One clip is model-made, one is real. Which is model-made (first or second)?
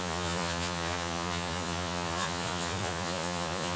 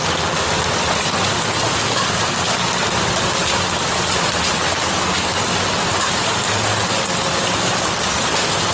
first